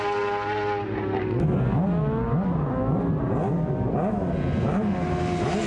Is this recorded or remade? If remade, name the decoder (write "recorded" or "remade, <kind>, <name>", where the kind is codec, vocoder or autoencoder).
recorded